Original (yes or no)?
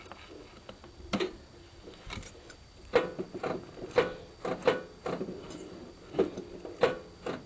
yes